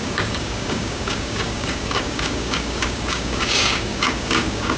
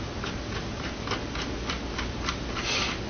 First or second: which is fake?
first